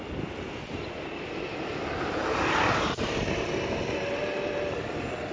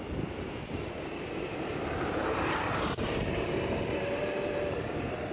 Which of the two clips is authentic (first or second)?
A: first